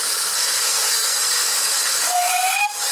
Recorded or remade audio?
remade